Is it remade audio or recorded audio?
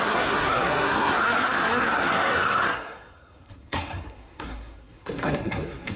remade